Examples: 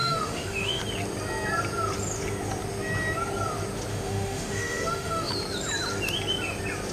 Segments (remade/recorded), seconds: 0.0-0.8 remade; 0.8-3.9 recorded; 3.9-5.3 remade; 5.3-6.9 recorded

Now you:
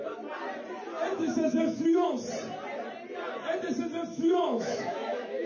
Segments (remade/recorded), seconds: 0.0-1.1 recorded; 1.1-2.1 remade; 2.1-4.1 recorded; 4.1-5.5 remade